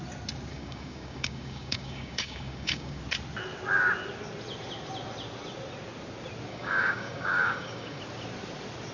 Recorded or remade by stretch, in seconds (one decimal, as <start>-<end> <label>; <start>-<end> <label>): 0.0-0.5 recorded; 0.5-3.0 remade; 3.0-6.5 recorded; 6.5-8.0 remade; 8.0-8.9 recorded